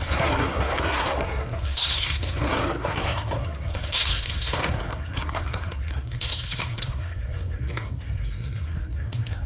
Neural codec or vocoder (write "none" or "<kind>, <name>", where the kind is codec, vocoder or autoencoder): codec, SNAC